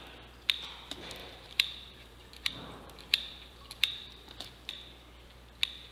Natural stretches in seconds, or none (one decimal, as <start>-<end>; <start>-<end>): 0.0-1.2; 4.7-5.9